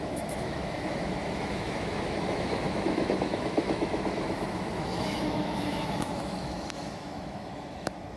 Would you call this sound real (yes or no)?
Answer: no